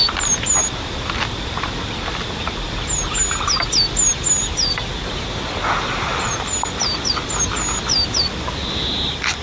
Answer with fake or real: real